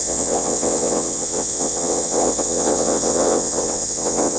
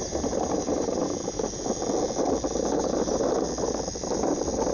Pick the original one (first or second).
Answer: second